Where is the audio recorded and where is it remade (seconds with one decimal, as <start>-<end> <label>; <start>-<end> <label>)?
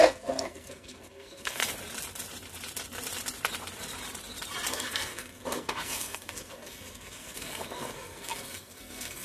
0.0-1.6 remade; 1.6-4.7 recorded; 4.7-9.2 remade